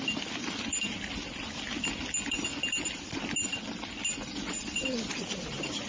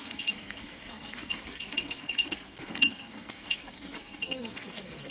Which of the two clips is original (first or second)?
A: first